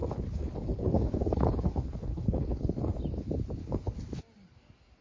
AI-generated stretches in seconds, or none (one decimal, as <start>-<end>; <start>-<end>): 0.0-3.0; 3.6-4.2